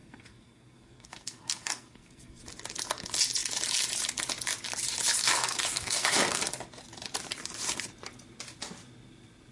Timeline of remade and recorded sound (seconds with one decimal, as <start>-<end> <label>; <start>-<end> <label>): 0.0-2.4 remade; 2.4-5.2 recorded; 5.2-6.4 remade; 6.4-9.5 recorded